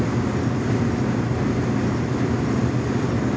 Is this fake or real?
real